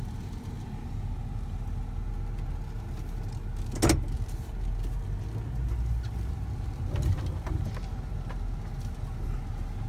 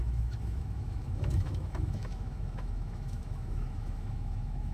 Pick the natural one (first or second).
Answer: first